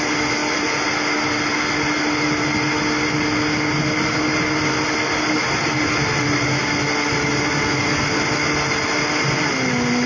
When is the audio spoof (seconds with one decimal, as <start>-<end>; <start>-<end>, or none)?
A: none